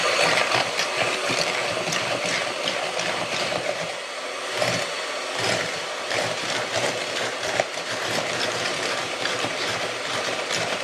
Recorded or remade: remade